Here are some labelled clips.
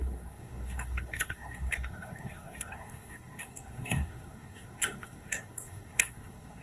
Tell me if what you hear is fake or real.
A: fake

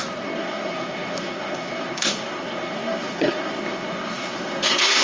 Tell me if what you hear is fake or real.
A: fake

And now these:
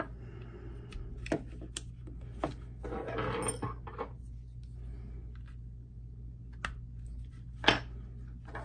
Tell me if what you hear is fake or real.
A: real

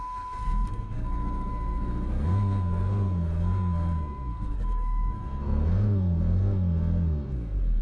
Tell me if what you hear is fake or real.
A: fake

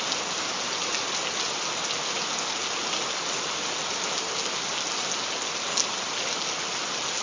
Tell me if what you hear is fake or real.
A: real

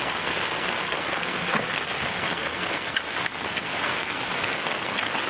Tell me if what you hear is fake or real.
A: fake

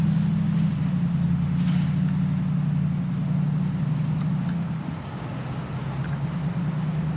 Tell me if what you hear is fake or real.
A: real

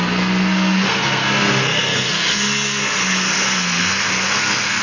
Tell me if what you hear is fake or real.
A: fake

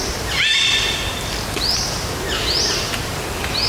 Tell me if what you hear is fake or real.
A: real